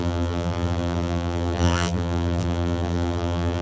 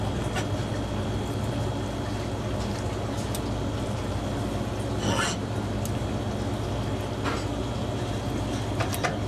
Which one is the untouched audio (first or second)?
second